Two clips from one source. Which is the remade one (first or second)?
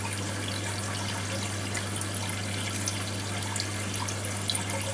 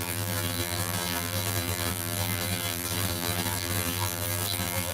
second